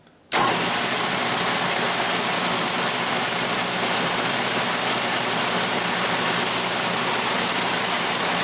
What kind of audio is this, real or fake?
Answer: real